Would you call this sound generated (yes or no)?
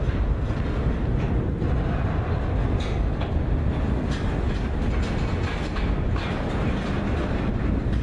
no